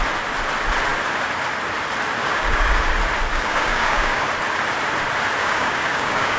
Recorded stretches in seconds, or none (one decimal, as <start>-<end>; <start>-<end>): 0.0-2.2; 2.8-3.3; 4.2-5.4